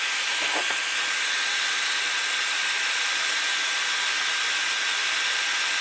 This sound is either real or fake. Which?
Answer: real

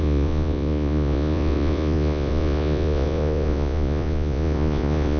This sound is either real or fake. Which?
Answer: fake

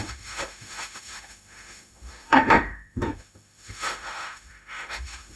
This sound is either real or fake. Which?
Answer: fake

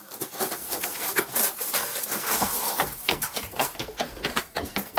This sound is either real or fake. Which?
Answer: fake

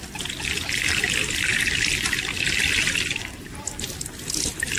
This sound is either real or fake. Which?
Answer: real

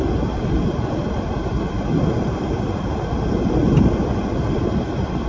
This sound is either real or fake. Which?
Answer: real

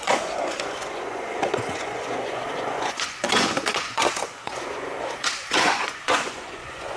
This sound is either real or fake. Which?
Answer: fake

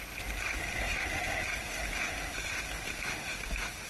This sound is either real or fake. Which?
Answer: real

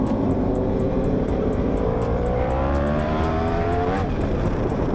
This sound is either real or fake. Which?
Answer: fake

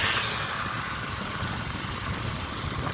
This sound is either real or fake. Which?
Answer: real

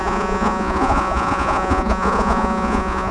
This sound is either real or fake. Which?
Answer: fake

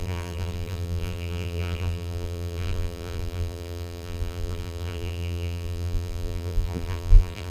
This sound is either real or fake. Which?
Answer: fake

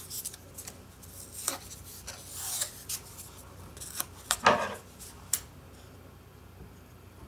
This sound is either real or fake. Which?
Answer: real